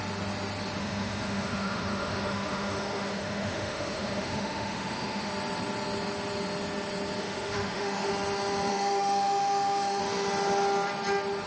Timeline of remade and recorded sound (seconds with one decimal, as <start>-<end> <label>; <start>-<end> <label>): 0.0-0.8 recorded; 0.8-5.3 remade; 5.3-7.2 recorded; 7.2-8.1 remade; 8.1-8.7 recorded; 8.7-10.0 remade; 10.0-11.5 recorded

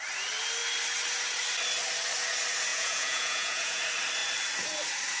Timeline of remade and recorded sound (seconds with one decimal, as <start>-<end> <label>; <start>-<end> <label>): 0.0-2.7 recorded; 2.7-3.8 remade; 3.8-5.2 recorded

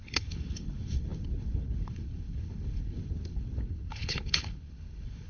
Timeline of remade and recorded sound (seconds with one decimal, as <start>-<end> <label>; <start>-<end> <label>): 0.0-5.3 remade

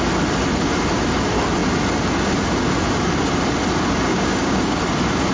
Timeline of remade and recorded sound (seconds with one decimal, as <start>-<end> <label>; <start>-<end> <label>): 0.0-4.1 recorded; 4.1-4.8 remade; 4.8-5.3 recorded

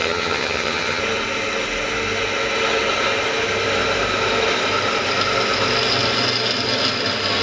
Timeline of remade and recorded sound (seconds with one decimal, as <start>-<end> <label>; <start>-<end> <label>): 0.0-1.0 remade; 1.0-7.4 recorded

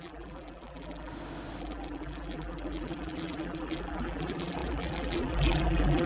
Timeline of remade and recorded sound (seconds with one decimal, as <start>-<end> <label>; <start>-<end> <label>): 0.0-1.1 remade; 1.1-1.6 recorded; 1.6-6.1 remade